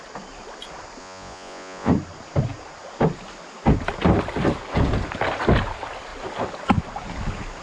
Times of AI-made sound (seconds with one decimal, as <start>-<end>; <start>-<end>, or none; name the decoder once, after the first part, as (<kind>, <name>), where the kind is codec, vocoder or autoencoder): 1.0-1.9 (vocoder, Vocos)